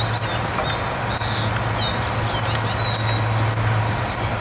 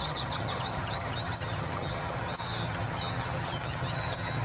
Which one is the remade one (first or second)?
second